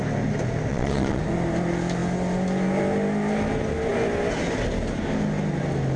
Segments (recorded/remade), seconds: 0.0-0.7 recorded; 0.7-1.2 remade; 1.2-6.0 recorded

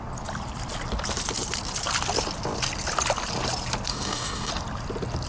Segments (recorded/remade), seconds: 0.0-3.9 recorded; 3.9-4.5 remade; 4.5-5.3 recorded

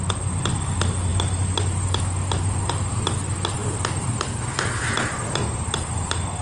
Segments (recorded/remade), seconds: 0.0-6.4 recorded

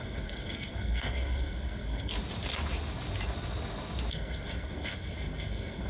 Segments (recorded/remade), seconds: 0.0-2.1 remade; 2.1-4.1 recorded; 4.1-5.9 remade

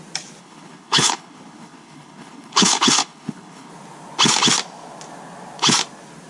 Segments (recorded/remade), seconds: 0.0-0.4 recorded; 0.4-3.7 remade; 3.7-6.3 recorded

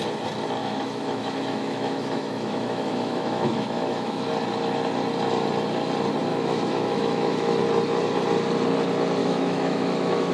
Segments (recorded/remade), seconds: 0.0-0.6 recorded; 0.6-4.3 remade; 4.3-6.3 recorded; 6.3-7.6 remade; 7.6-9.2 recorded; 9.2-10.3 remade

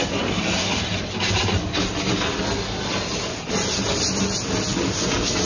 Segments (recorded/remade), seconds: 0.0-5.5 recorded

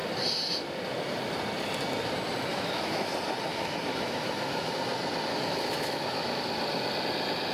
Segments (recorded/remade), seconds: 0.0-2.5 recorded; 2.5-3.1 remade; 3.1-3.5 recorded; 3.5-4.7 remade; 4.7-5.3 recorded; 5.3-6.4 remade; 6.4-7.5 recorded